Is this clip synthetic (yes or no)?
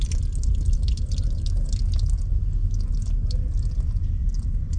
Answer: yes